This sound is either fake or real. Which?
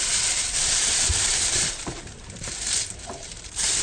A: fake